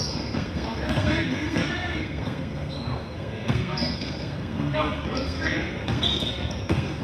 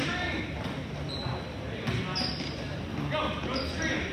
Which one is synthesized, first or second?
first